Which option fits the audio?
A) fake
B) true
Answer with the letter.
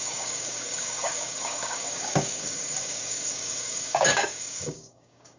A